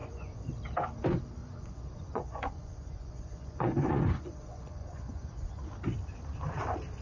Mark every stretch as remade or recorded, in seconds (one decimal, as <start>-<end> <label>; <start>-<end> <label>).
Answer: 0.0-0.5 remade; 0.5-1.4 recorded; 1.4-5.6 remade; 5.6-7.0 recorded